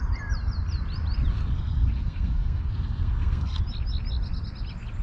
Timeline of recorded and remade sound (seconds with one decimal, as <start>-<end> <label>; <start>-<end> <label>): 0.0-1.3 recorded; 1.3-3.6 remade; 3.6-5.0 recorded